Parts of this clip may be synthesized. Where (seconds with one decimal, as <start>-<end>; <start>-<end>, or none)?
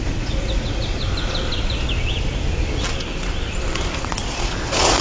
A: 0.0-1.0; 4.0-5.0